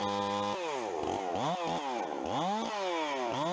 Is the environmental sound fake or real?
real